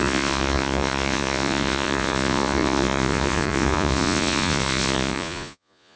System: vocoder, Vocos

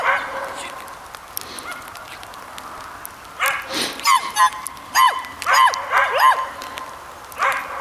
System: none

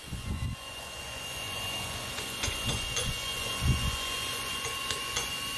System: vocoder, Vocos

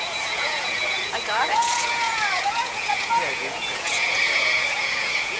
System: vocoder, Vocos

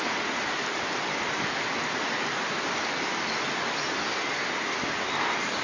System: none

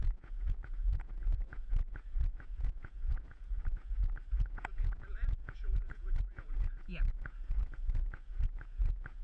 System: vocoder, Vocos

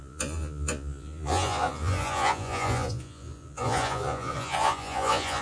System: vocoder, Vocos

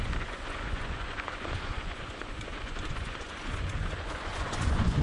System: vocoder, Vocos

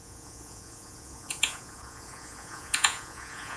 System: vocoder, Vocos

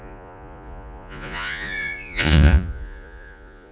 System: vocoder, Vocos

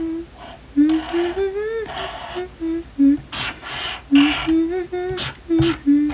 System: none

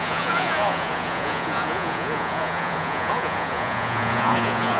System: vocoder, Vocos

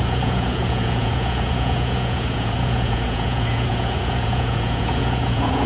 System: vocoder, Vocos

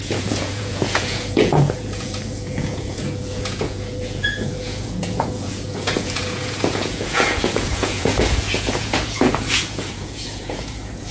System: vocoder, Vocos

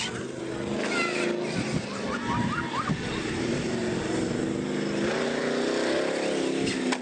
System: none